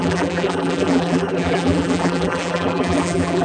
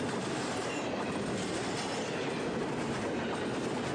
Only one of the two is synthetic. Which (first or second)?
first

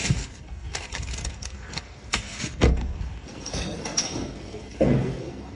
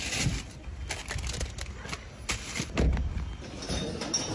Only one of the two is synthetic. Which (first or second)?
first